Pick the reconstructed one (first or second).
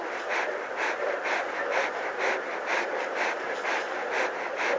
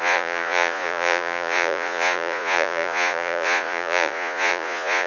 second